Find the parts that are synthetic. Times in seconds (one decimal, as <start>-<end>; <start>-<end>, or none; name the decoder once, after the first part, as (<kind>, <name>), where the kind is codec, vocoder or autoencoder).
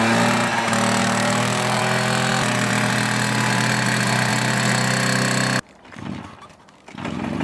1.0-1.8 (codec, DAC)